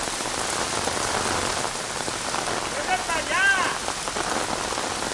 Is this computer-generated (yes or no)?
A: no